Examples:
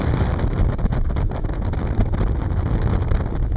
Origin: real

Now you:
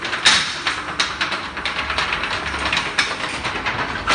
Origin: real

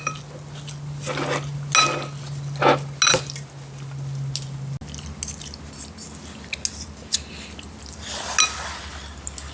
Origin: real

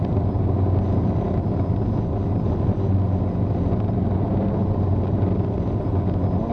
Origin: real